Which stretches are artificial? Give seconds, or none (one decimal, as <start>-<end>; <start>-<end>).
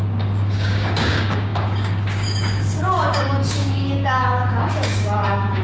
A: 0.0-5.6